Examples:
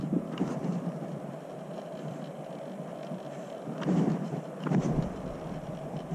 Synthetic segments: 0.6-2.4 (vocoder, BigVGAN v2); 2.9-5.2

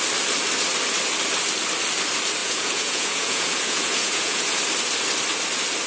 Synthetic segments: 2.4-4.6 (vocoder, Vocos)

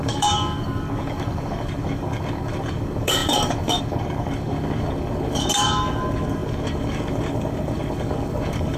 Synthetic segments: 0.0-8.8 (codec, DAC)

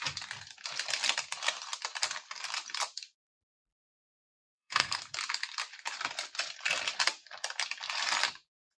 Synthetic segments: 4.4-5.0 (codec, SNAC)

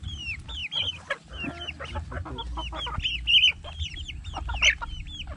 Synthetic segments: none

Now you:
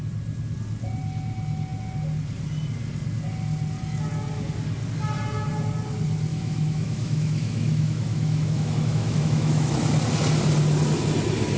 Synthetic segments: 6.3-9.7 (autoencoder, DAC-VAE)